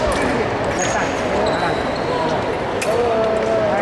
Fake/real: real